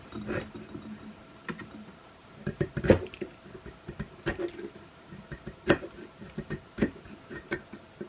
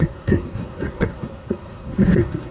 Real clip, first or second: first